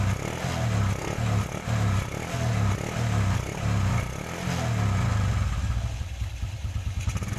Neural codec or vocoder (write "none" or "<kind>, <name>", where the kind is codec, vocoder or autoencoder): none